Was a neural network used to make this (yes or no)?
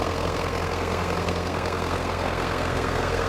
yes